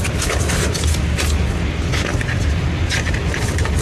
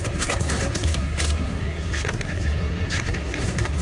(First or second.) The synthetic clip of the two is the second